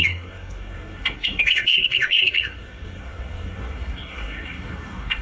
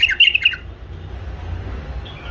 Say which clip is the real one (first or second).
second